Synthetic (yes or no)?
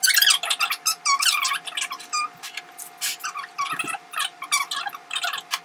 no